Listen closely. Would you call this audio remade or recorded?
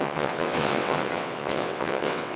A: remade